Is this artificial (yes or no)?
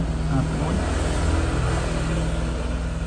no